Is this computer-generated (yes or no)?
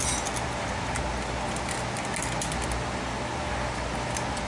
no